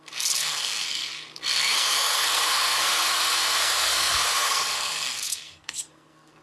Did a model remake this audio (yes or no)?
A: yes